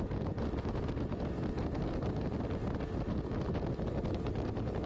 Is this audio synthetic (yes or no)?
no